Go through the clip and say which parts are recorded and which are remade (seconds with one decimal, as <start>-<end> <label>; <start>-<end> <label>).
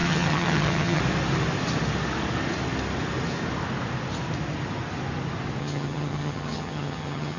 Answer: 0.0-1.0 remade; 1.0-5.6 recorded; 5.6-7.4 remade